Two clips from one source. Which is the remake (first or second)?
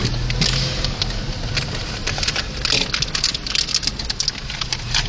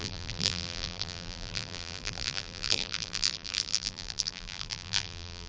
second